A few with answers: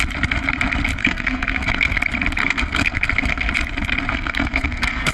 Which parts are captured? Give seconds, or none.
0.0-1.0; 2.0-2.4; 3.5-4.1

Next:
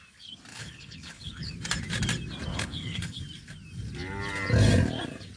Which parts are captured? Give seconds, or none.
0.0-0.5; 1.5-2.5; 3.2-5.4

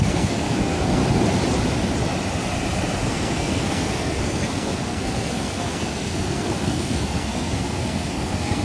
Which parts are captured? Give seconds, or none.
1.0-3.1

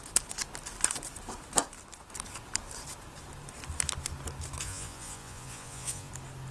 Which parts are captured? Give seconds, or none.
0.0-4.6; 6.1-6.5